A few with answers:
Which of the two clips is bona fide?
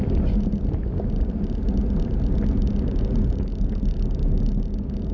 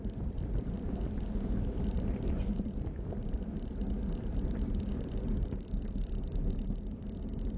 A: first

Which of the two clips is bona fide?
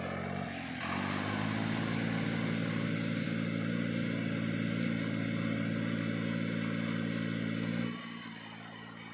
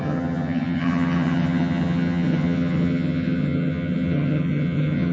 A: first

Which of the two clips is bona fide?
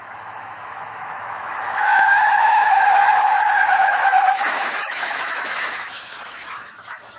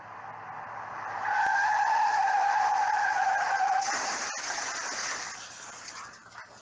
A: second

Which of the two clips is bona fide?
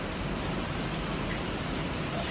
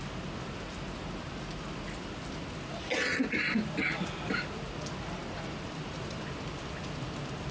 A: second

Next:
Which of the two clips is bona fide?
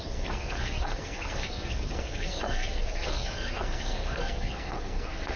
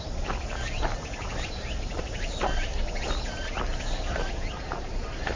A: second